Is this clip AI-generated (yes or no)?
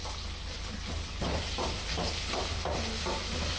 no